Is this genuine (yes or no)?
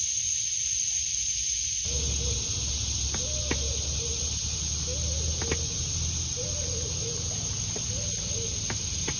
yes